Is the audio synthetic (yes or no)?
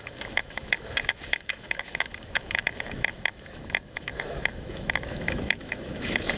yes